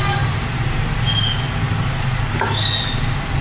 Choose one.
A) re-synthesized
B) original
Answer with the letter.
B